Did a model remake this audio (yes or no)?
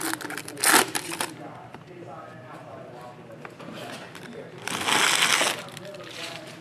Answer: no